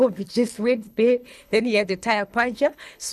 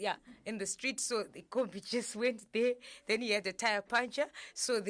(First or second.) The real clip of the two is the second